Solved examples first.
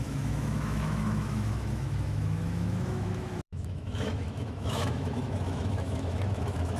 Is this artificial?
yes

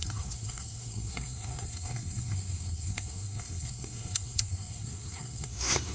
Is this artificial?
yes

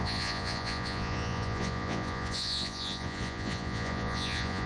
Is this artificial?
yes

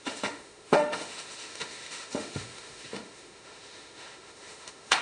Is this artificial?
yes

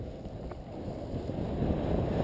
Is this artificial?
no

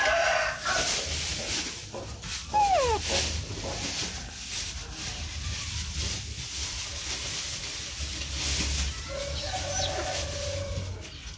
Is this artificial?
no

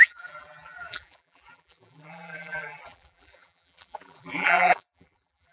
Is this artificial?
yes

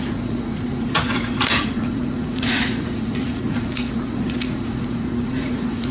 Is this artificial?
yes